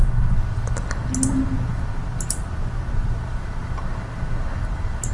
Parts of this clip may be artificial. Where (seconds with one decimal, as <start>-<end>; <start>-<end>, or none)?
none